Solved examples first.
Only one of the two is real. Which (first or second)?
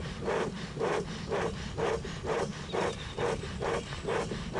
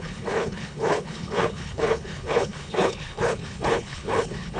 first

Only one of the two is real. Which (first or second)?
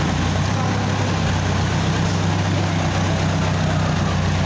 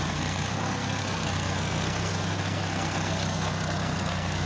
first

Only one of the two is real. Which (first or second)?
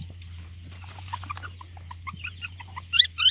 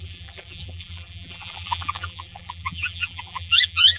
first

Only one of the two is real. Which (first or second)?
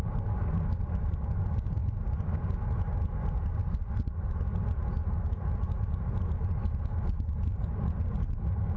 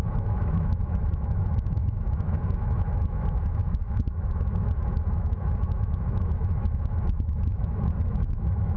first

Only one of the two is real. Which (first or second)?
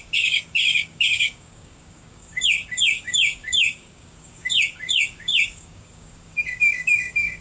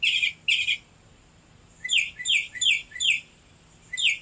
second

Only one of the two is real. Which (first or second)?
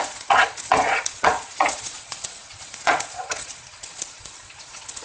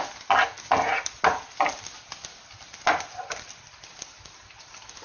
second